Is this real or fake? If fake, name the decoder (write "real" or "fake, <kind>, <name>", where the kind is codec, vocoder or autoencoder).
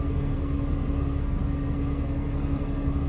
fake, codec, SNAC